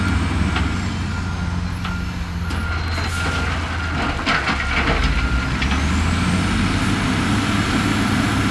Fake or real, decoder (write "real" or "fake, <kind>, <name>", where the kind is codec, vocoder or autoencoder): real